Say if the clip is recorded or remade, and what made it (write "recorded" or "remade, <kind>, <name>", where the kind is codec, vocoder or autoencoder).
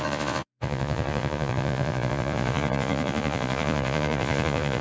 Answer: remade, vocoder, Vocos